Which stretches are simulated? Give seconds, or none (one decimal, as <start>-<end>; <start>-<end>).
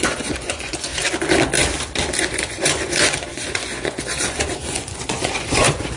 0.0-0.9; 2.2-6.0